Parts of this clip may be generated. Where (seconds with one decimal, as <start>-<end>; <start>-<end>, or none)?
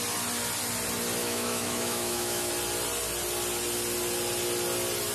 1.2-2.5